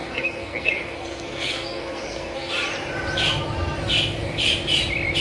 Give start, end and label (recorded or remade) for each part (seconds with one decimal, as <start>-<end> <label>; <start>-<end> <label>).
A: 0.0-2.5 remade; 2.5-5.2 recorded